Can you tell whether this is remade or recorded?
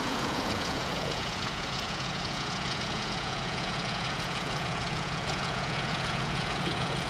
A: remade